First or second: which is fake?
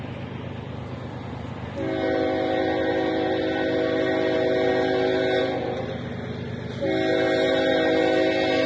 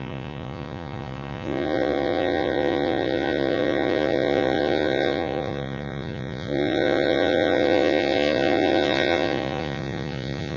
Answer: second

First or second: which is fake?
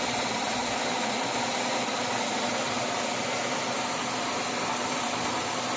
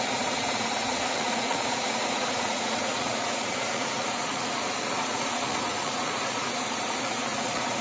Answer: second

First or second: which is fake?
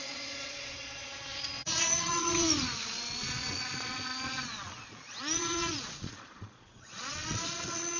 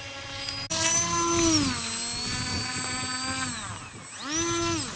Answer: first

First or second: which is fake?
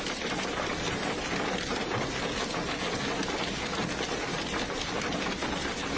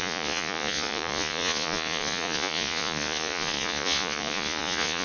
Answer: second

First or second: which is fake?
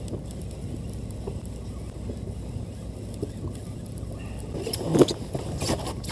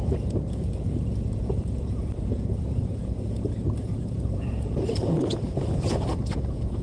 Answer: second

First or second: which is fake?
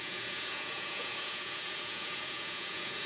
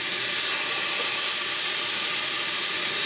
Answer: first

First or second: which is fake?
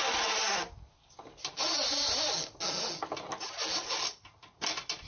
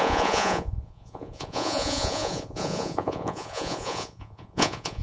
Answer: second